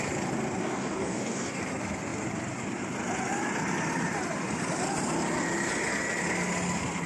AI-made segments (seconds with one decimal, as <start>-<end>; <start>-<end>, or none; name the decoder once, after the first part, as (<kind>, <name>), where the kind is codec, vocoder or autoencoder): 0.6-1.6 (codec, DAC)